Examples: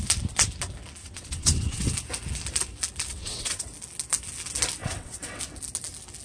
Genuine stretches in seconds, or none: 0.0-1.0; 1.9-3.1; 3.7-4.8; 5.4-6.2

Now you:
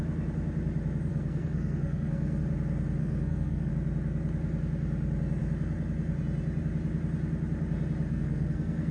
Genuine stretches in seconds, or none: 0.0-1.1; 2.4-3.0; 3.7-8.1

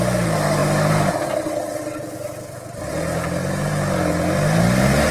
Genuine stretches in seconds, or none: 0.0-5.1

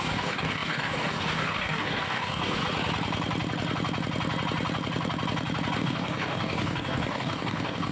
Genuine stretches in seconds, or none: 2.6-5.8

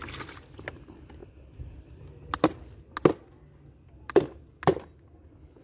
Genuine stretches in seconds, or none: 0.0-5.6